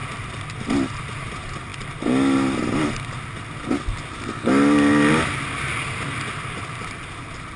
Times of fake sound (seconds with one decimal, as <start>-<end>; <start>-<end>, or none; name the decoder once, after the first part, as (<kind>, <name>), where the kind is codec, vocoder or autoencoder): none